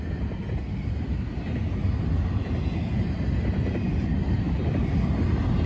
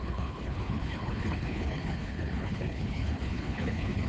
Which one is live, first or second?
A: first